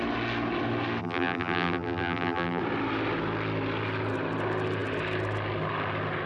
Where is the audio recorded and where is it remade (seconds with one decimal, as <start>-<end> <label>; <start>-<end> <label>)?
0.0-1.0 recorded; 1.0-2.6 remade; 2.6-6.3 recorded